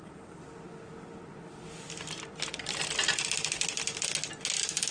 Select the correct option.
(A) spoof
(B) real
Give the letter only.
B